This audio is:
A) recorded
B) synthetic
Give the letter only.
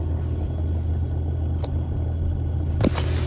A